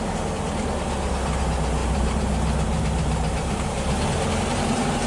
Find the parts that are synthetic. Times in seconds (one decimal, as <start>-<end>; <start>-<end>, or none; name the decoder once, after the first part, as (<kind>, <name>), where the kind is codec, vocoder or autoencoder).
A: 1.8-5.1 (vocoder, BigVGAN v2)